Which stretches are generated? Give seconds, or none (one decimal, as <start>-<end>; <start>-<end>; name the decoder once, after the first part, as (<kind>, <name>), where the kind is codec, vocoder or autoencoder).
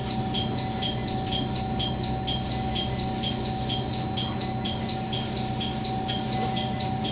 none